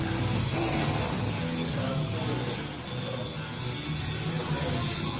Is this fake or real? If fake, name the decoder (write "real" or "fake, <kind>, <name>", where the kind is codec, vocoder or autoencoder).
real